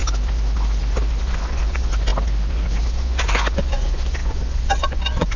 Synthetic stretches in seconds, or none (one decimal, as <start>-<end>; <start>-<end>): 1.2-2.1; 2.9-5.4

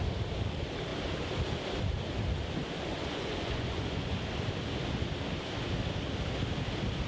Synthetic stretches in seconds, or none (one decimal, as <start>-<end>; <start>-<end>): 2.9-4.2

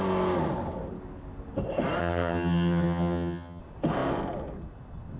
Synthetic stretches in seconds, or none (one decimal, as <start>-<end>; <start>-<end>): 2.0-3.6

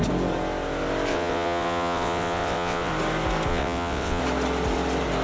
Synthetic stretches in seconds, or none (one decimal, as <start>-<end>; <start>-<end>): 1.1-2.9; 3.5-4.2

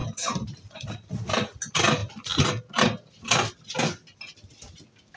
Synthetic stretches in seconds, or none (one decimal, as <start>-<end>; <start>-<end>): none

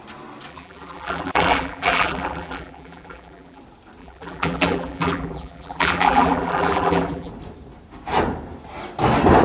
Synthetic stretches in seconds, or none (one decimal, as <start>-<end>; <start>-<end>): 0.5-3.6; 4.0-7.3

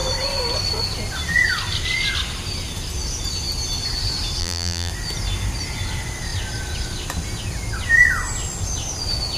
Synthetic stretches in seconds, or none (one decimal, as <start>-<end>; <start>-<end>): 4.4-4.9